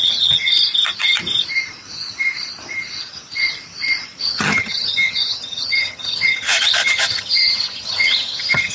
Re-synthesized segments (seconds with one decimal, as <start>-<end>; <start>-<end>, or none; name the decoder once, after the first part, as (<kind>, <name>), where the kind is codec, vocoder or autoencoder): 0.0-0.5 (vocoder, HiFi-GAN); 4.2-8.7